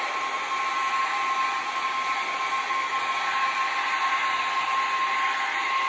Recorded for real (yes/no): yes